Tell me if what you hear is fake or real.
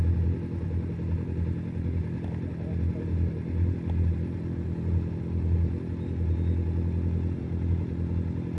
real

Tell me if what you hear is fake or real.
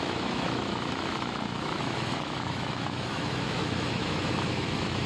fake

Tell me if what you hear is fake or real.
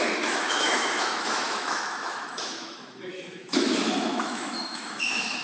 fake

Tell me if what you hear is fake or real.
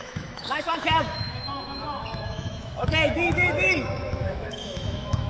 fake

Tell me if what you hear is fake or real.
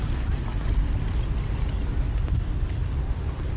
real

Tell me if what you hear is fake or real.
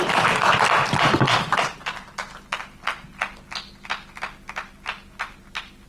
real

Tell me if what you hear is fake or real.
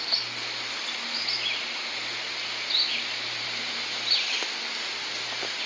real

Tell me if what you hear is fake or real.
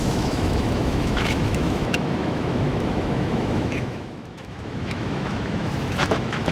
fake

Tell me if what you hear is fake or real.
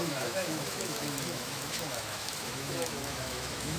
fake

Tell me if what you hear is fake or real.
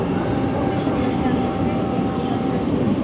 real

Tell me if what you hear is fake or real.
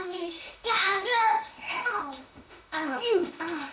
fake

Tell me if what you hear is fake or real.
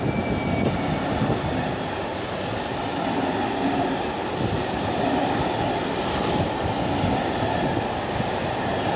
real